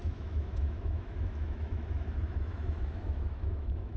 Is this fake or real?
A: fake